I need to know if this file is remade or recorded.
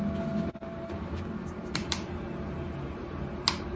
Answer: recorded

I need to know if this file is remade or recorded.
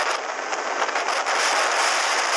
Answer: recorded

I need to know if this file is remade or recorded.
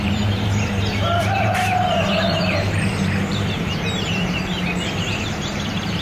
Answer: remade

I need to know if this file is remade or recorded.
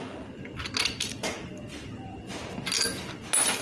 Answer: recorded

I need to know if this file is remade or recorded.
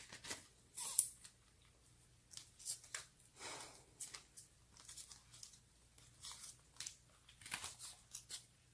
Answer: recorded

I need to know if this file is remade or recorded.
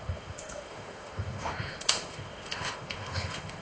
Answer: remade